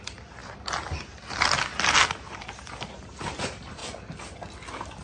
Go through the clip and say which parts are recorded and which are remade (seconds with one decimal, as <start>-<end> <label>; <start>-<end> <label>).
0.0-0.4 remade; 0.4-2.1 recorded; 2.1-3.8 remade; 3.8-5.0 recorded